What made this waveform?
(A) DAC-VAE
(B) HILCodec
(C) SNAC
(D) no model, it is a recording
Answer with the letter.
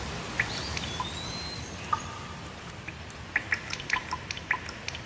D